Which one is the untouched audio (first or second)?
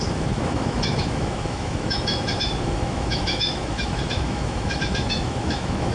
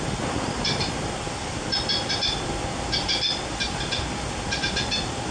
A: second